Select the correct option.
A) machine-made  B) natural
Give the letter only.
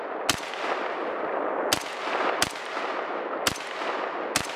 B